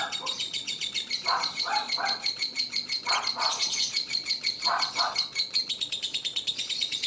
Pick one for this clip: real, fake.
fake